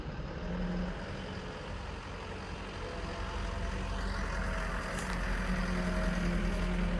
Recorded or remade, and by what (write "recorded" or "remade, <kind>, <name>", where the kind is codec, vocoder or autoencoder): recorded